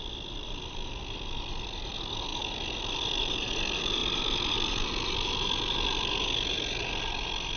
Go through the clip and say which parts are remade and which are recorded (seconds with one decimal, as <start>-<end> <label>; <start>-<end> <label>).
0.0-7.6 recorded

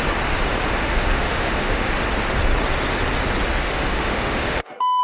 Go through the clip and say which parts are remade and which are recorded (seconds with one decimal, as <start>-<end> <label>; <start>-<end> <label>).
0.0-0.8 recorded; 0.8-1.9 remade; 1.9-3.6 recorded; 3.6-5.0 remade

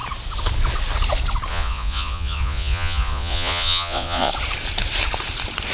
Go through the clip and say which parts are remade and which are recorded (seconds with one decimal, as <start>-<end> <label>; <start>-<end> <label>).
0.0-1.5 recorded; 1.5-4.3 remade; 4.3-5.7 recorded